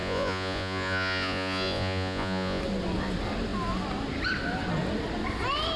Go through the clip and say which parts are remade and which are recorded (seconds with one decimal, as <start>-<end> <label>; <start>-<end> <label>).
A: 0.0-2.6 remade; 2.6-5.8 recorded